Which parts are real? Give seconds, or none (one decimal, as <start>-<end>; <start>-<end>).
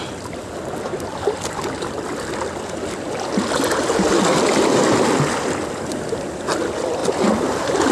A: 0.0-7.9